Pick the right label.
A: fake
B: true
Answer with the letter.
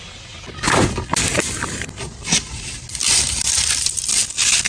B